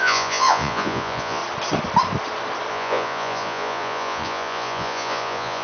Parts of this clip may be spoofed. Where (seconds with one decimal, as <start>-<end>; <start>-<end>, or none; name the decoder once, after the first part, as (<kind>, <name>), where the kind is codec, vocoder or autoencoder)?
0.0-1.4 (vocoder, Vocos); 2.7-5.6